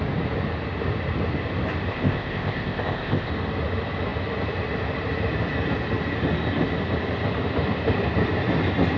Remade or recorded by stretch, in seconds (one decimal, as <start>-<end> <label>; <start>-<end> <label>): 0.0-1.9 recorded; 1.9-3.3 remade; 3.3-9.0 recorded